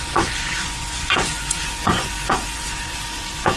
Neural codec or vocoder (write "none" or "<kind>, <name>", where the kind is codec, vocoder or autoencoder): vocoder, Vocos